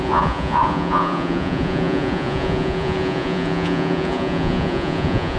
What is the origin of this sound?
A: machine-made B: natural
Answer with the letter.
A